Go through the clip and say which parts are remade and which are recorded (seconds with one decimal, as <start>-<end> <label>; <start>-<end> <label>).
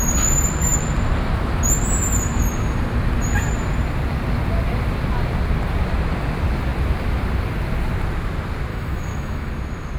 0.0-8.7 recorded; 8.7-9.5 remade; 9.5-10.0 recorded